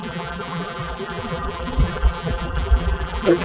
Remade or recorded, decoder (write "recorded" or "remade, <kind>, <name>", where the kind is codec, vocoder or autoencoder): remade, vocoder, BigVGAN v2